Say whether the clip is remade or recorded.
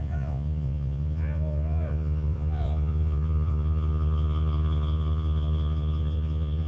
remade